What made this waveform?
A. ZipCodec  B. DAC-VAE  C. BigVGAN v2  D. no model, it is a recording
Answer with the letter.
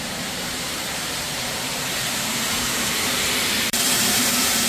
C